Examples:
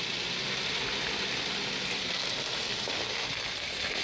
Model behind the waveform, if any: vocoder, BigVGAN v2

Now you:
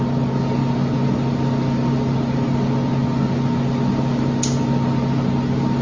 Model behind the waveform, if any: none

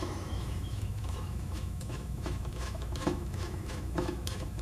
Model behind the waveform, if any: autoencoder, DAC-VAE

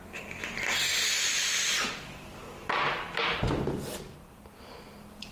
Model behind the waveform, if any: none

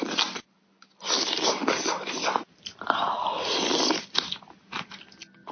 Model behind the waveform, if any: none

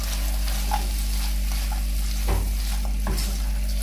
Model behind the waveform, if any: none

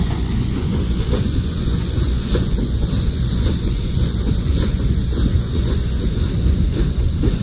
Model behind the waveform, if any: vocoder, Vocos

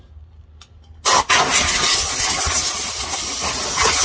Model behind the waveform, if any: none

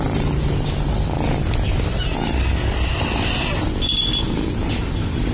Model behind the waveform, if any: none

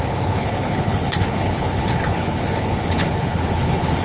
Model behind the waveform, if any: codec, HILCodec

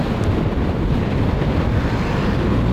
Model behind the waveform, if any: none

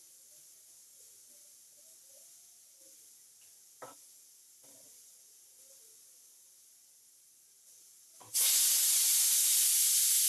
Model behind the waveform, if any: none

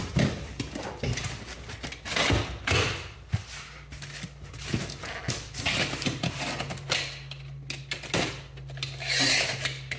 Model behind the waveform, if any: none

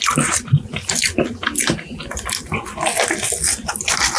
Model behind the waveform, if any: none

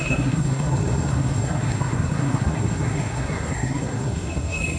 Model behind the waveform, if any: codec, SNAC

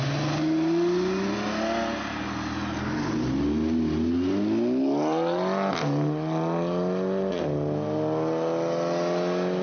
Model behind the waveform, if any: none